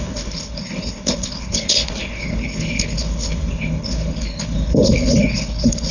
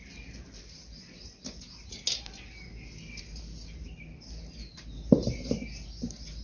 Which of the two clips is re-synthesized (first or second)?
first